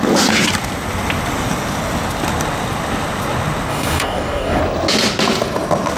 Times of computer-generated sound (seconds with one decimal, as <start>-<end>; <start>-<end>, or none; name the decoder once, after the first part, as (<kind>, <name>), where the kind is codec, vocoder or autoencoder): 3.7-4.6 (codec, DAC)